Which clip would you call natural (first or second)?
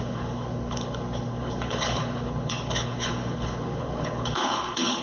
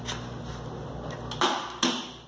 second